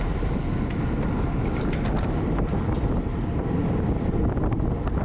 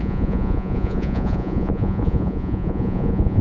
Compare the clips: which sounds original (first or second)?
first